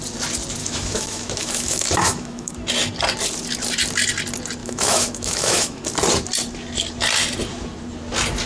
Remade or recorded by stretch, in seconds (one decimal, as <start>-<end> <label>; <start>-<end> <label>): 0.0-0.6 recorded; 0.6-2.5 remade; 2.5-4.6 recorded; 4.6-5.8 remade; 5.8-8.5 recorded